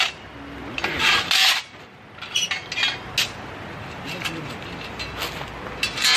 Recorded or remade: recorded